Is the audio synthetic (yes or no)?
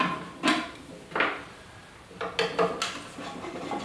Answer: no